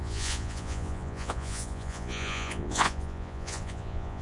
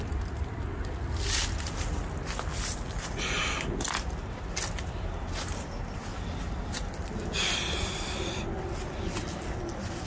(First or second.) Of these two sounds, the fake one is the first